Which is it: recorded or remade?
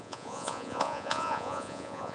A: remade